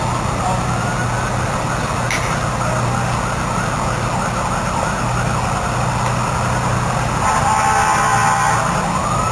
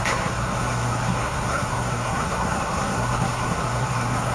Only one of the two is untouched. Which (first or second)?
first